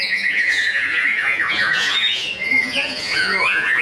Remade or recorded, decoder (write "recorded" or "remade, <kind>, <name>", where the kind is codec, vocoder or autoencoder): remade, vocoder, Vocos